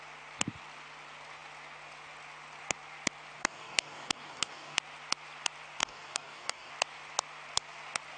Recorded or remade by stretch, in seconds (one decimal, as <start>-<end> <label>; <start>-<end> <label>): 0.0-3.4 recorded; 3.4-4.8 remade; 4.8-5.8 recorded; 5.8-6.7 remade; 6.7-8.2 recorded